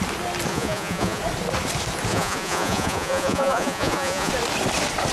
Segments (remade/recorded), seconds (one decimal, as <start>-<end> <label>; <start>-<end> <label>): 0.0-0.5 recorded; 0.5-1.2 remade; 1.2-2.1 recorded; 2.1-4.3 remade; 4.3-5.1 recorded